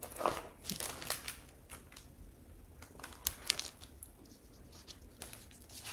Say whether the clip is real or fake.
real